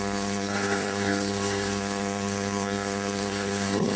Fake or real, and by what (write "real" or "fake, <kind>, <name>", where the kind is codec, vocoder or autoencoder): fake, codec, SNAC